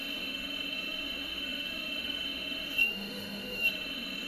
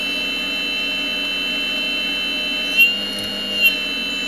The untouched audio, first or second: second